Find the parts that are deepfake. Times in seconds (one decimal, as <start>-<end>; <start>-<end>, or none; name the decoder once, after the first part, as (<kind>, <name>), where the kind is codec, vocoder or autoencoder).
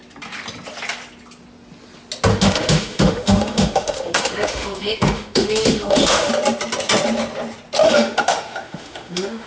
2.3-6.3 (autoencoder, DAC-VAE); 7.8-9.5